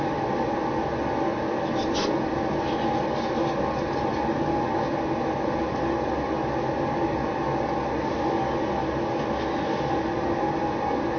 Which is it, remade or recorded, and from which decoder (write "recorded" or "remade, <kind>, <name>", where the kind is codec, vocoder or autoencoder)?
recorded